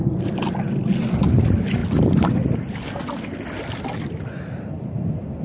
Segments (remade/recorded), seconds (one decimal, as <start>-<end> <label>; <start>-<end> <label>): 0.0-5.4 recorded